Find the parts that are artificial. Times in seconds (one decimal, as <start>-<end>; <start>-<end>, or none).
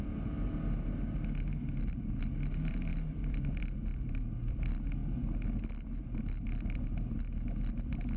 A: 2.9-4.6